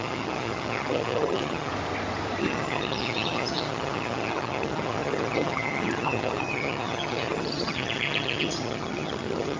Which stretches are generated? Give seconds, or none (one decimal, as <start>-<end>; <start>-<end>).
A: 0.0-1.7; 2.4-9.6